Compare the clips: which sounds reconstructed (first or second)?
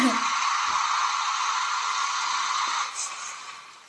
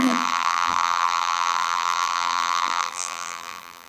second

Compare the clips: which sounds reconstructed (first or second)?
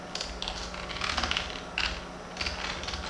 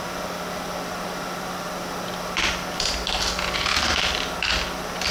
second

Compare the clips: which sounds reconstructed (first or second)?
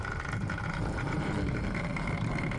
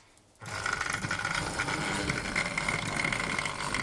first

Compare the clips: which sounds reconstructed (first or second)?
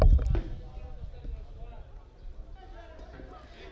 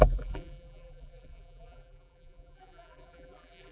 second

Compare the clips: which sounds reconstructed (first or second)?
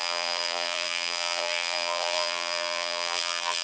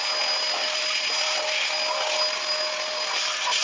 first